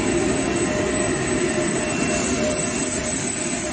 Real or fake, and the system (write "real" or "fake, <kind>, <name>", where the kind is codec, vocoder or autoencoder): real